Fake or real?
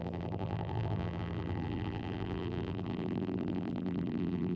fake